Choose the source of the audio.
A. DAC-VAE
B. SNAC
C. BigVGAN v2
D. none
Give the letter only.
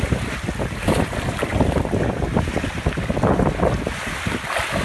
D